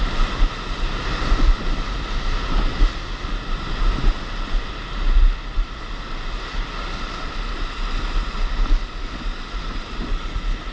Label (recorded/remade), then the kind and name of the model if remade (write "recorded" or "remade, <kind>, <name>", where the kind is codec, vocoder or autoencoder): recorded